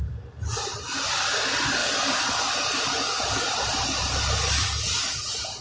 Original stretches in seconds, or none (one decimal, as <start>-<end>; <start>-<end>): 0.0-5.6